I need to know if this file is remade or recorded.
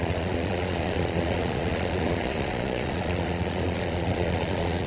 remade